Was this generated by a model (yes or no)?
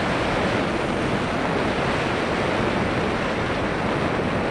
no